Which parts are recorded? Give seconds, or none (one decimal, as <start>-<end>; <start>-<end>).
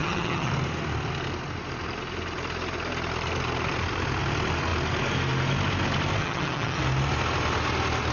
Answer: 0.5-6.2; 6.8-8.1